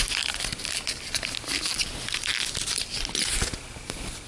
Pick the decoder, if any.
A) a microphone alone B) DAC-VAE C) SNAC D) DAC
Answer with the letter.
A